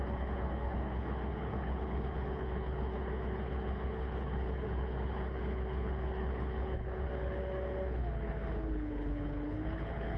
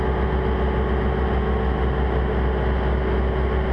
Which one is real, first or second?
second